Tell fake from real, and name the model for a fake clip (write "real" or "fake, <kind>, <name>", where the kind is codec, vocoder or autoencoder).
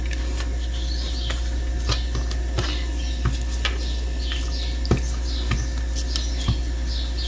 real